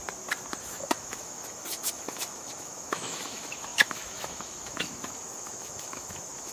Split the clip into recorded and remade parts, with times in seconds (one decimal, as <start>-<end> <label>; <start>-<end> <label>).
0.0-0.6 recorded; 0.6-6.5 remade